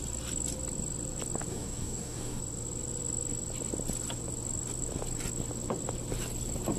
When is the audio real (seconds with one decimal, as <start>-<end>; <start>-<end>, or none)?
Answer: 0.0-1.5; 2.4-6.8

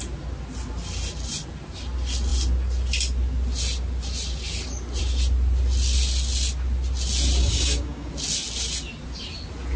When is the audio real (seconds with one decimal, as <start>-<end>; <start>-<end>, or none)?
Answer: 0.0-7.4; 8.1-9.8

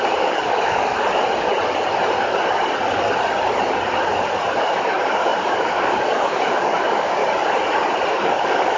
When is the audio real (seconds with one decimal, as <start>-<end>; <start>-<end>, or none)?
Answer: 0.8-4.6; 7.2-8.1

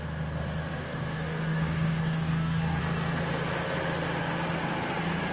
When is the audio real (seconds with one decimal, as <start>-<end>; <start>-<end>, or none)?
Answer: 0.0-0.8; 2.8-5.3

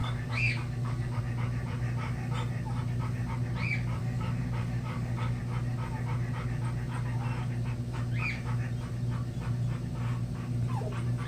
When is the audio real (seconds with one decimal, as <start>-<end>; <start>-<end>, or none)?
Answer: 1.2-4.0; 5.4-11.3

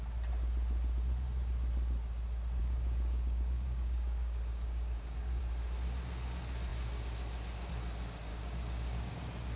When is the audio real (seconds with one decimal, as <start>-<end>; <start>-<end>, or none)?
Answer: 0.0-2.6; 5.4-8.3; 9.1-9.6